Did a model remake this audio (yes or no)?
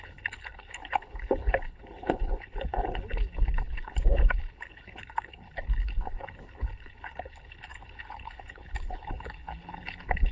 yes